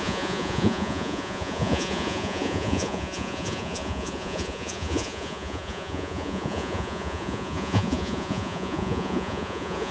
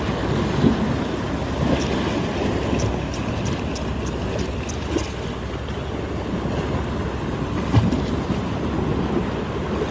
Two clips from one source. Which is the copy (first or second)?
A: first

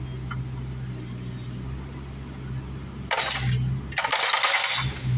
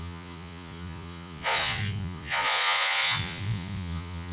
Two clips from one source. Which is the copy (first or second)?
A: second